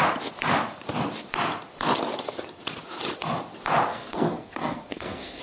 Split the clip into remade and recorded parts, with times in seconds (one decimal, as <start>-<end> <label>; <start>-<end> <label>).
0.0-3.9 recorded; 3.9-5.4 remade